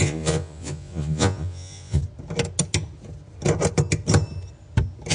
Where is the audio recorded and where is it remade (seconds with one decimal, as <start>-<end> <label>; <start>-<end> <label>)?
0.0-2.0 remade; 2.0-5.1 recorded